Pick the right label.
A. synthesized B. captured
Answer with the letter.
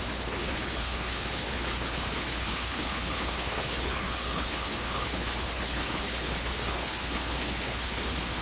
A